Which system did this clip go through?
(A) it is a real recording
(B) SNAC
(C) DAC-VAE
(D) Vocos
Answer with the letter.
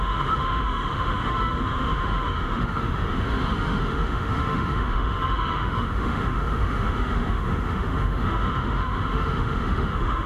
C